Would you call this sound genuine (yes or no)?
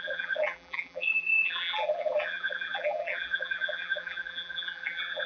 no